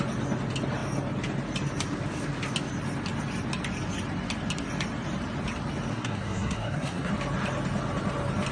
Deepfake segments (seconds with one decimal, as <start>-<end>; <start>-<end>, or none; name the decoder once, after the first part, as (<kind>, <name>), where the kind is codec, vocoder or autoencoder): 5.9-7.1 (codec, SNAC)